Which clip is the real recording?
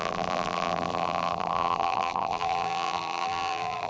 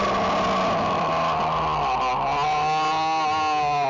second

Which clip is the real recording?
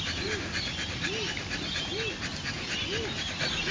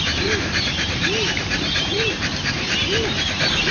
first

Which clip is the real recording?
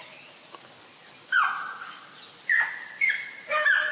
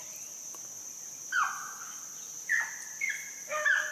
first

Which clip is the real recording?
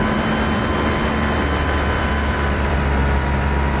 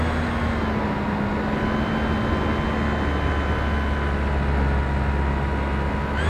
second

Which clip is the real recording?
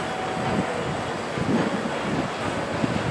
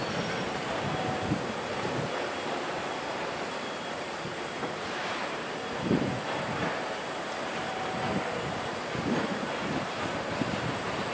first